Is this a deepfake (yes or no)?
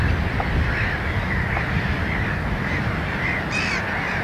no